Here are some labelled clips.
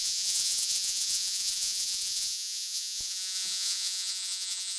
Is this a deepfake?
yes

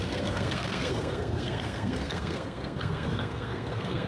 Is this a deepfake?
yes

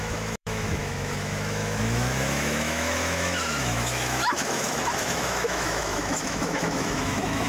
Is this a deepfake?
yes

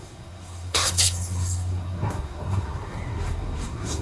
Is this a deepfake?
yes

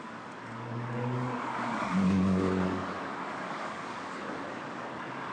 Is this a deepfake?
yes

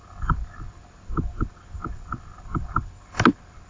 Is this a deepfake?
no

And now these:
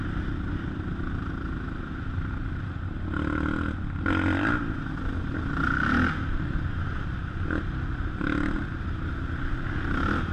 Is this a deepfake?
no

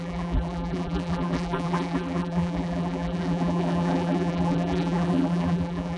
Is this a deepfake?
yes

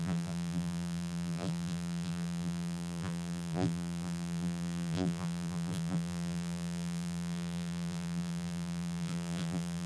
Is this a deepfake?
yes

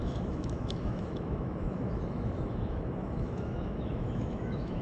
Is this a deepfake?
yes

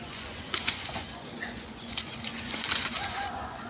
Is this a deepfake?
yes